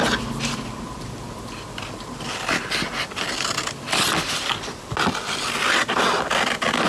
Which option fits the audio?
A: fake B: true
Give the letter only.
B